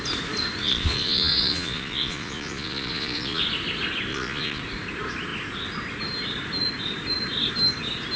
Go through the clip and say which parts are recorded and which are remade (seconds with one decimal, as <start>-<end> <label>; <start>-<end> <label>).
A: 0.0-0.6 recorded; 0.6-3.4 remade; 3.4-4.1 recorded; 4.1-4.6 remade; 4.6-8.2 recorded